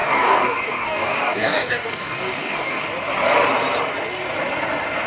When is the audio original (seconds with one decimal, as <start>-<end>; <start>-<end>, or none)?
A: 2.8-5.1